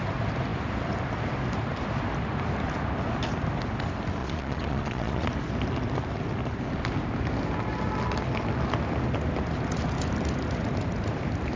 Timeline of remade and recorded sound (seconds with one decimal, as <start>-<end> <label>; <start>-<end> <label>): 0.0-4.2 recorded; 4.2-5.3 remade; 5.3-11.6 recorded